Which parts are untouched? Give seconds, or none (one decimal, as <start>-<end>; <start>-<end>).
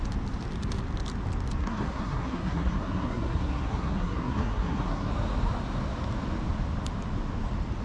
0.0-1.6; 5.1-7.8